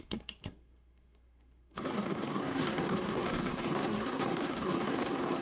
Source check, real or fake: fake